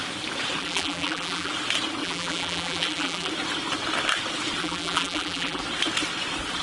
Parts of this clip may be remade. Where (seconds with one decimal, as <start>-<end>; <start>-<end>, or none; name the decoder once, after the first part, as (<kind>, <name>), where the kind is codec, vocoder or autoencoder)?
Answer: 0.6-1.5 (vocoder, BigVGAN v2); 2.0-3.3; 4.6-5.6